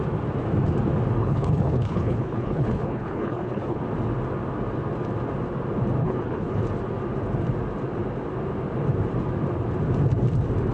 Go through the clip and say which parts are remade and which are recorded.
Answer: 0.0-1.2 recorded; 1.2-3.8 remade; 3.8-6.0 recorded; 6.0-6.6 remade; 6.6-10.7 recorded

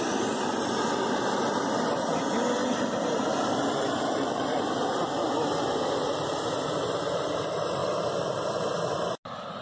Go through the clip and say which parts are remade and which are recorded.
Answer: 0.0-2.6 recorded; 2.6-4.6 remade; 4.6-9.6 recorded